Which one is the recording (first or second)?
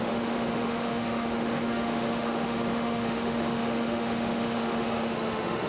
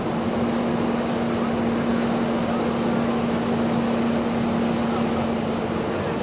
second